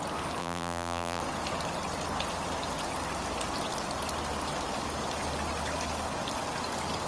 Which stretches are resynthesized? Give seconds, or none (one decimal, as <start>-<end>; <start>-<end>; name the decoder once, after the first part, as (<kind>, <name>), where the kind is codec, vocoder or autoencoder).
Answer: 0.4-1.2 (vocoder, BigVGAN v2)